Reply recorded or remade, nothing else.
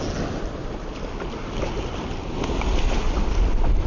recorded